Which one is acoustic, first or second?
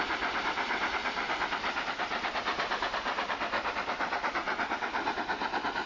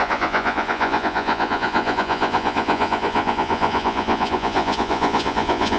first